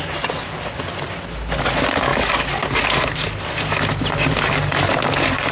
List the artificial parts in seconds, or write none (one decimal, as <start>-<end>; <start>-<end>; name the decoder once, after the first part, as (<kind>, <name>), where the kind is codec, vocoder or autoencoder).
none